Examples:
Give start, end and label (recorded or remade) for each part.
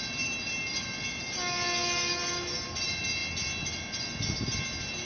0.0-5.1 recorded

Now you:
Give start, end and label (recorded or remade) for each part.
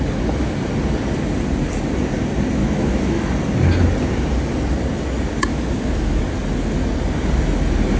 0.0-2.6 recorded; 2.6-3.3 remade; 3.3-5.5 recorded; 5.5-6.2 remade; 6.2-8.0 recorded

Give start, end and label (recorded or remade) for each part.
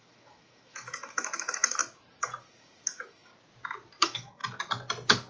0.0-1.8 remade; 1.8-2.4 recorded; 2.4-3.3 remade; 3.3-4.0 recorded; 4.0-4.4 remade; 4.4-5.3 recorded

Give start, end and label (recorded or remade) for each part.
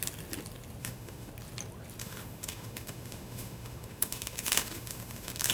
0.0-0.8 recorded; 0.8-1.3 remade; 1.3-2.0 recorded; 2.0-5.5 remade